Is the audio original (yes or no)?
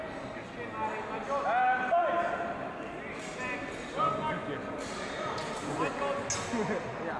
yes